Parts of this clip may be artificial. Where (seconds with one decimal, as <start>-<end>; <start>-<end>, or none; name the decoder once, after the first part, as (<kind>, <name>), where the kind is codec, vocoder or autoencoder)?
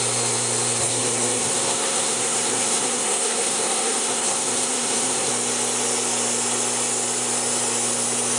0.8-5.3 (codec, SNAC)